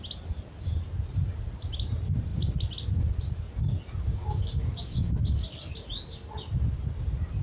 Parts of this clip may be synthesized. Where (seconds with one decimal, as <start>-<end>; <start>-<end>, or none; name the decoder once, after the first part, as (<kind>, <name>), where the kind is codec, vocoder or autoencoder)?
4.1-5.1 (codec, DAC)